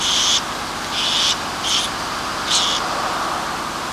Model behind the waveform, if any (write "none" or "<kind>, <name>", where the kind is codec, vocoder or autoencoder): none